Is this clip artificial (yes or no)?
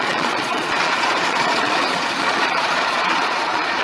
yes